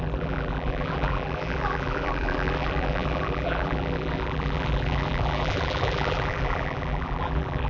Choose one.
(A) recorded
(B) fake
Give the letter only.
B